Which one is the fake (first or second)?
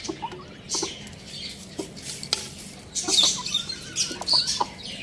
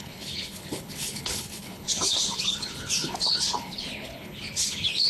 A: second